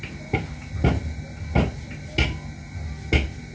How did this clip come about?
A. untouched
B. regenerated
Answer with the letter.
A